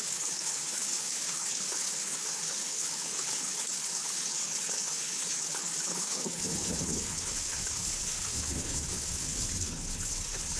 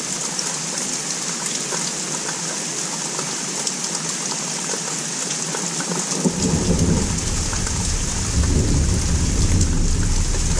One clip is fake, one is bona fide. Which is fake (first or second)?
first